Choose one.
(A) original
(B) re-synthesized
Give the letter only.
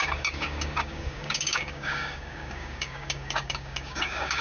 B